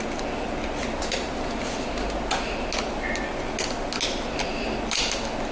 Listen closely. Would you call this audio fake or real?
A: real